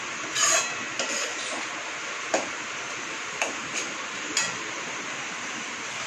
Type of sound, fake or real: real